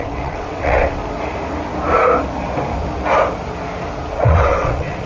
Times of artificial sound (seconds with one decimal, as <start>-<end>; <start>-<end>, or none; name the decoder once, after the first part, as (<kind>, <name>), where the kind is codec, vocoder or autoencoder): 0.0-1.0 (vocoder, WaveNeXt); 4.1-5.1